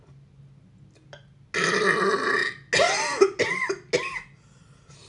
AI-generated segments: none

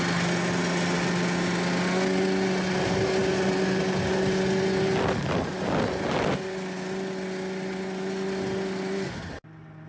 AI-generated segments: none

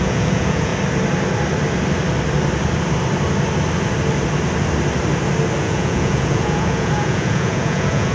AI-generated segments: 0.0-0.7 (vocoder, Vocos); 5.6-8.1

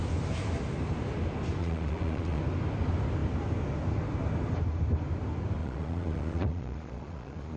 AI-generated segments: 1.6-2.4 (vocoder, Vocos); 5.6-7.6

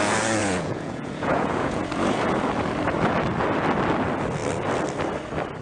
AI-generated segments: 0.4-1.8 (vocoder, Vocos)

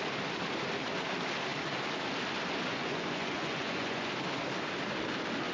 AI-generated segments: 2.7-4.1 (vocoder, Vocos)

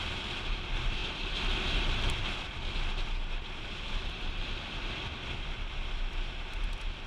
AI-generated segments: none

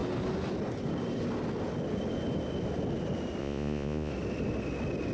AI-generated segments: 3.4-4.1 (vocoder, Vocos)